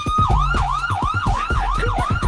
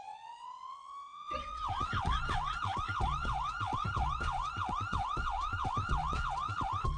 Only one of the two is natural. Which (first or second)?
first